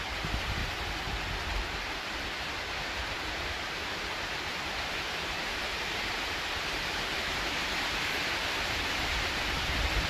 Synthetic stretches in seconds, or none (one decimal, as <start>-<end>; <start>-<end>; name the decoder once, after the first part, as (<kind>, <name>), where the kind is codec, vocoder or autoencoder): 0.0-0.6 (vocoder, BigVGAN v2); 1.8-10.1